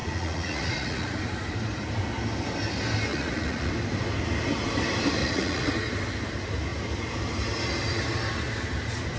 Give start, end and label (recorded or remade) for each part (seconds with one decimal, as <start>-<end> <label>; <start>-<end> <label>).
0.0-1.2 remade; 1.2-3.1 recorded; 3.1-3.7 remade; 3.7-5.2 recorded; 5.2-5.7 remade; 5.7-9.2 recorded